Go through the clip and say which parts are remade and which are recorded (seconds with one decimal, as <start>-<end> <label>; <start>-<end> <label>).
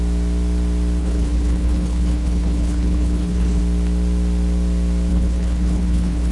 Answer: 0.0-1.0 recorded; 1.0-3.6 remade; 3.6-5.1 recorded; 5.1-6.3 remade